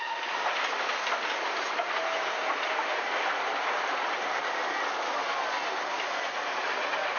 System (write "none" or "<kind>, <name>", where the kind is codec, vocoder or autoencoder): none